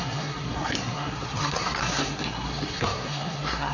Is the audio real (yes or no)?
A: no